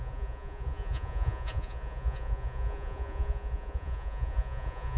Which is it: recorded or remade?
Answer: remade